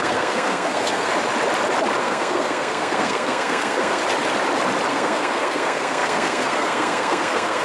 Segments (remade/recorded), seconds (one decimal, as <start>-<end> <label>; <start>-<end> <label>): 0.0-1.1 remade; 1.1-2.0 recorded; 2.0-4.0 remade; 4.0-4.9 recorded; 4.9-7.6 remade